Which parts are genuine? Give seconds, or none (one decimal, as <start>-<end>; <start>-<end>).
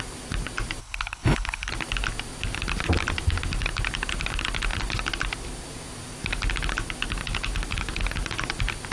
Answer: 0.0-0.8; 1.7-8.9